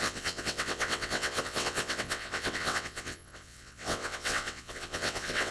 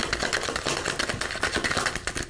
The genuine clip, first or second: second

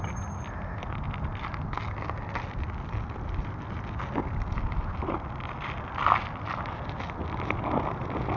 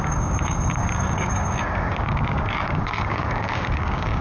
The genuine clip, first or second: first